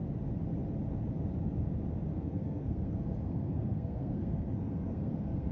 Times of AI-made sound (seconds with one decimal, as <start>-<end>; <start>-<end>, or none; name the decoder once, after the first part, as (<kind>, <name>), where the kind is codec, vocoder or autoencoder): 2.1-5.5 (codec, SNAC)